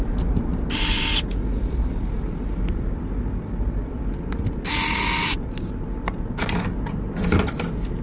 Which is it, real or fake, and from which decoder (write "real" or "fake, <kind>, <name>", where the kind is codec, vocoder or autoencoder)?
real